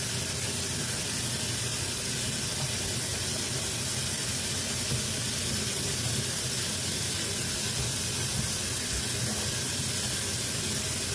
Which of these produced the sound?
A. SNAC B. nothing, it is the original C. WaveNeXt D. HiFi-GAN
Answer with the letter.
B